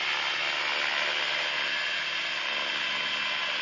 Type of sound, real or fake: real